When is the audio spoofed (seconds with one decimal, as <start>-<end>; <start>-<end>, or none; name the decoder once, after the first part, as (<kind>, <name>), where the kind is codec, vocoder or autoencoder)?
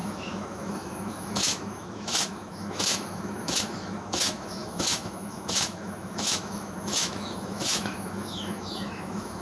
0.0-9.4 (autoencoder, DAC-VAE)